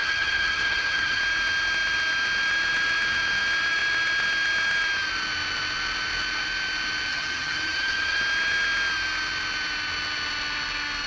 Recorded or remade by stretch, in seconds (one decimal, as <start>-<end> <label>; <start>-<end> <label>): 0.0-1.2 remade; 1.2-7.1 recorded; 7.1-8.2 remade; 8.2-11.1 recorded